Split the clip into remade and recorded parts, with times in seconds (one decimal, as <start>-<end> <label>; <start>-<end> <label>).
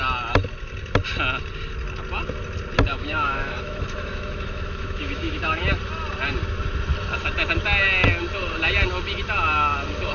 0.0-2.9 recorded; 2.9-5.6 remade; 5.6-10.1 recorded